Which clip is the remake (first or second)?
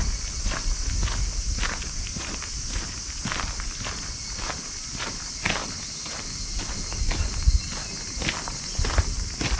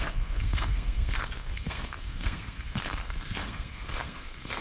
second